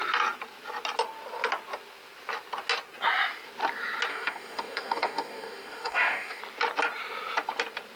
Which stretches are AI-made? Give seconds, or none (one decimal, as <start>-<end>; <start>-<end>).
4.1-6.4